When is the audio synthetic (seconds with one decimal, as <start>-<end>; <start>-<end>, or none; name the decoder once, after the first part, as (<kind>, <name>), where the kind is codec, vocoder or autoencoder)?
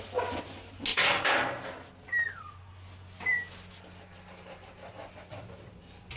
none